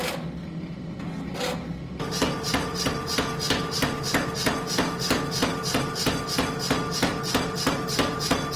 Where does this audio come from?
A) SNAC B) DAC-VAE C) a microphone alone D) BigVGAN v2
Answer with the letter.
C